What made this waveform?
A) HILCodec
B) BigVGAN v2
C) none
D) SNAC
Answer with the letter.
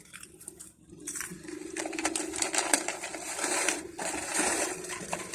B